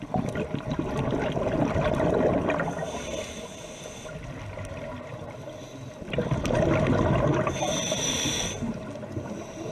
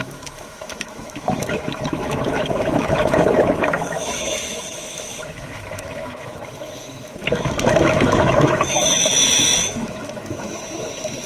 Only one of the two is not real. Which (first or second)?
second